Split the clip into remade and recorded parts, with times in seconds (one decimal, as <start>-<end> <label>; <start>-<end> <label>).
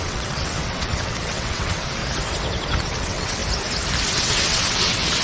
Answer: 0.0-2.0 remade; 2.0-2.8 recorded; 2.8-3.4 remade; 3.4-4.1 recorded; 4.1-5.2 remade